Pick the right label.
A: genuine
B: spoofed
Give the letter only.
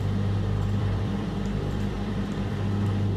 B